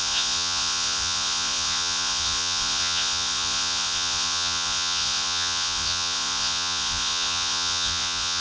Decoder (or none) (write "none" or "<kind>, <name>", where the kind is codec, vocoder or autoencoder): vocoder, Vocos